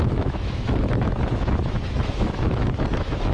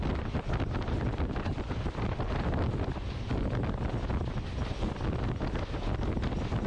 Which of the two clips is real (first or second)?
second